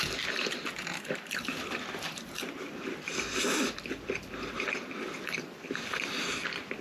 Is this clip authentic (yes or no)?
no